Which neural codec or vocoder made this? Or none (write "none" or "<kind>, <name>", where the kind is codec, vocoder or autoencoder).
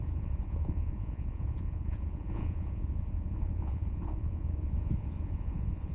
vocoder, Vocos